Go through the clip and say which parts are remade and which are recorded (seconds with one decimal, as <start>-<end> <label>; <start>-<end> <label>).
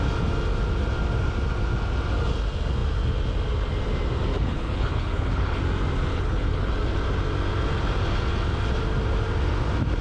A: 0.0-4.3 recorded; 4.3-5.6 remade; 5.6-6.1 recorded; 6.1-6.7 remade; 6.7-10.0 recorded